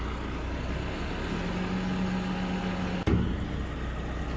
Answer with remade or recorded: recorded